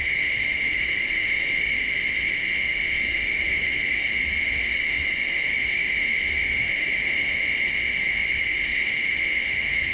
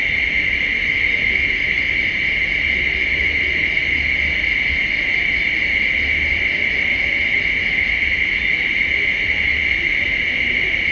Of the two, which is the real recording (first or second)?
second